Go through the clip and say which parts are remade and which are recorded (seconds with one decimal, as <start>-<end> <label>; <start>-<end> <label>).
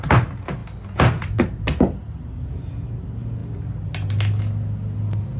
0.0-5.4 recorded